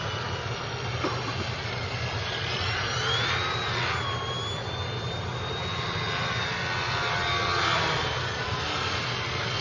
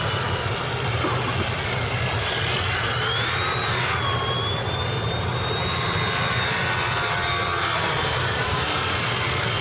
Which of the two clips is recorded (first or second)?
first